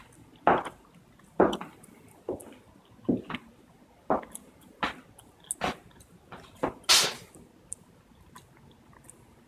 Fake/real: real